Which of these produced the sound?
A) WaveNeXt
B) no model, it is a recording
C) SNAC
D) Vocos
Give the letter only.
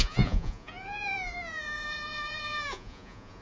D